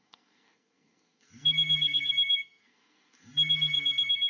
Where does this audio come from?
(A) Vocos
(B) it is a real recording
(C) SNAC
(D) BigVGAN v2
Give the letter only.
C